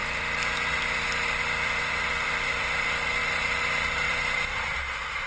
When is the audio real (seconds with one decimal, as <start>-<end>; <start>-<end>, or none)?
2.6-3.2; 4.5-5.3

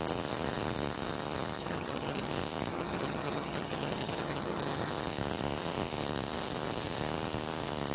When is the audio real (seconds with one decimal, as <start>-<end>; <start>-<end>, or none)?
0.0-1.6; 2.3-2.7; 4.9-7.9

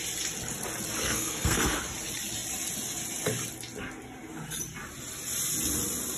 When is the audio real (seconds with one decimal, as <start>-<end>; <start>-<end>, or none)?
0.0-1.0; 1.8-6.2

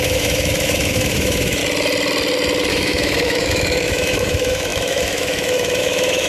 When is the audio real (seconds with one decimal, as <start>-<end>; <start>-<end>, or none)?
1.6-2.7

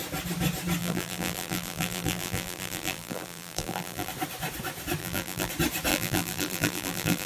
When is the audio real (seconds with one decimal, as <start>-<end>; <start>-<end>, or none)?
0.0-0.8; 4.1-5.0; 5.5-5.9

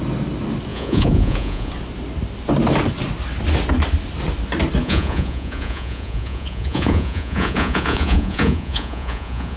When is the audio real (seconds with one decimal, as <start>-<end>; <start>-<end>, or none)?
0.0-0.7; 1.7-4.8

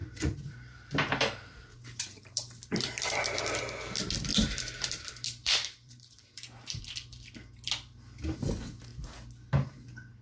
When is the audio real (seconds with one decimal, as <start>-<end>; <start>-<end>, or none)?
3.6-4.3; 6.8-10.2

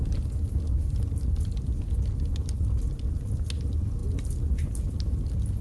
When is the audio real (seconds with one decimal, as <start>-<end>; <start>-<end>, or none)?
0.0-5.6